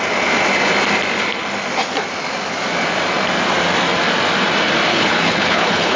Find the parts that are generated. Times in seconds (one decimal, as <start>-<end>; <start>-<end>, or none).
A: 4.9-6.0